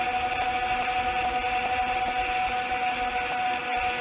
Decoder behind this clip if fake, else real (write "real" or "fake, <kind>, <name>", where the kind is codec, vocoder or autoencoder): real